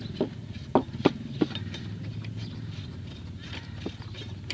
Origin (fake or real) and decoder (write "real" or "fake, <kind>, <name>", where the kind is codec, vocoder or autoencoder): real